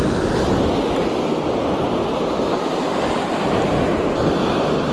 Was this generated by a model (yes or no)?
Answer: no